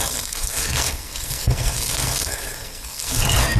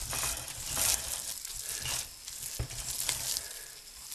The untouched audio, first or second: second